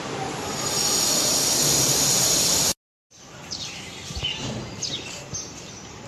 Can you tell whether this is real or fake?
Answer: real